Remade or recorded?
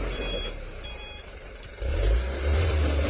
remade